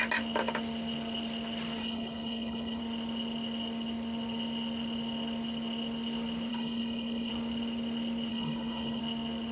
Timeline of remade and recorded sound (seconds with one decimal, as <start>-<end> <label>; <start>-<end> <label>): 0.0-1.8 recorded; 1.8-2.8 remade; 2.8-6.5 recorded; 6.5-7.3 remade; 7.3-8.3 recorded; 8.3-9.0 remade; 9.0-9.5 recorded